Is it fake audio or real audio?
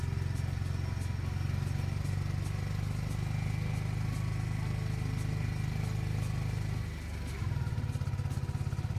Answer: real